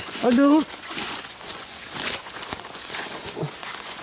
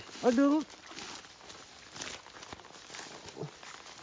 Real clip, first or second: second